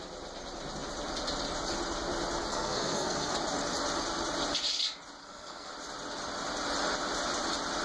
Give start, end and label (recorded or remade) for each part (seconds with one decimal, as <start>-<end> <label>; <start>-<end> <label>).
0.0-2.5 recorded; 2.5-3.3 remade; 3.3-5.2 recorded; 5.2-5.7 remade; 5.7-7.8 recorded